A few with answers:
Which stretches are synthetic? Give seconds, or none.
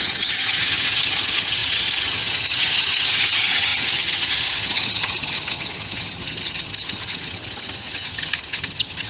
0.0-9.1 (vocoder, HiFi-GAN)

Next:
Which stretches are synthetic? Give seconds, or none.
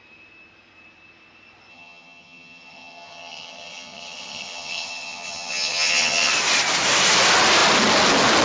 1.7-6.3 (vocoder, HiFi-GAN)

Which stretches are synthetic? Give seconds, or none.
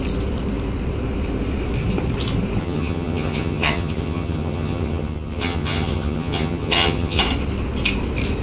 2.6-7.2 (vocoder, HiFi-GAN)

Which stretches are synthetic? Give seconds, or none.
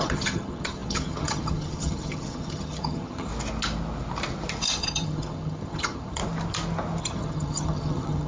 0.0-3.3 (vocoder, HiFi-GAN); 4.8-6.2; 7.0-8.3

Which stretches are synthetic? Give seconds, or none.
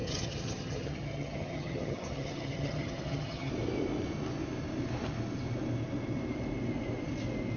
0.0-3.5 (vocoder, HiFi-GAN)